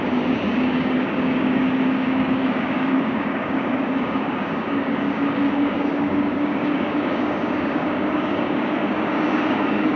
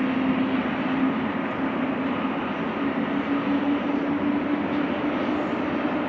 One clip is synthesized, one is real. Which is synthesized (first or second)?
first